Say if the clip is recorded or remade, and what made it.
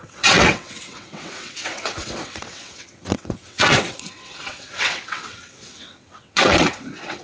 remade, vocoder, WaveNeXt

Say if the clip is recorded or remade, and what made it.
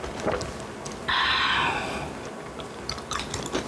recorded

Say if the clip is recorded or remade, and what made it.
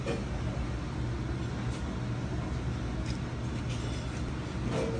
recorded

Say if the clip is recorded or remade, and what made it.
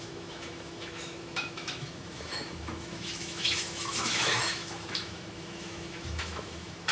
remade, autoencoder, DAC-VAE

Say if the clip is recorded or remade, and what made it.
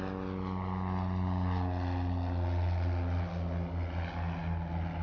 recorded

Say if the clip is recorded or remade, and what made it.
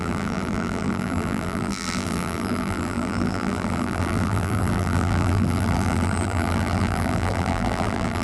remade, vocoder, BigVGAN v2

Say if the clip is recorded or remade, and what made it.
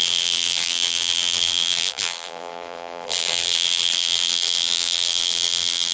remade, vocoder, BigVGAN v2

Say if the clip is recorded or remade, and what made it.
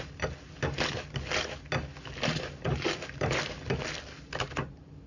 recorded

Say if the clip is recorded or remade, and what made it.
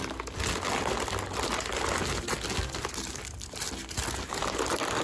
recorded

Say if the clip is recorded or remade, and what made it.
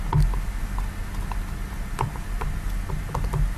recorded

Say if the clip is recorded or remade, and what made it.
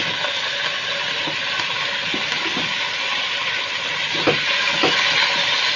recorded